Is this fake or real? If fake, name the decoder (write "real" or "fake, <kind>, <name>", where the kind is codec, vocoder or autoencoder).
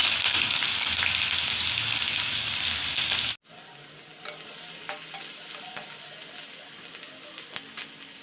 real